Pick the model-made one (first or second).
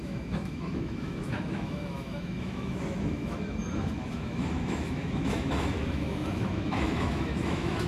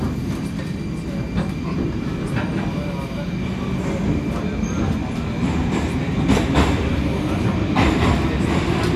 first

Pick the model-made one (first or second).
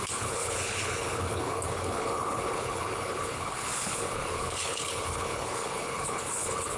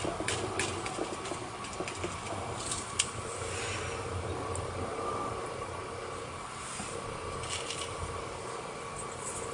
first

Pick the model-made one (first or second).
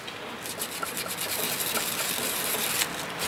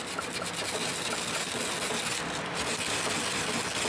first